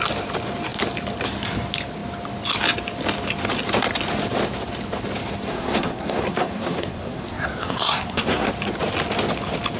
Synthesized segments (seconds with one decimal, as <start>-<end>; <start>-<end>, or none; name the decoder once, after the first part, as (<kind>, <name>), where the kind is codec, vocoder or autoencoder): 5.5-8.5 (codec, SNAC)